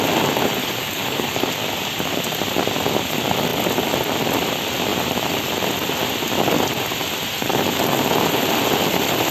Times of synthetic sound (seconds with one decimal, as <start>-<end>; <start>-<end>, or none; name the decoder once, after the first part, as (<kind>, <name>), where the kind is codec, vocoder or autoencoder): 0.6-1.5 (codec, DAC)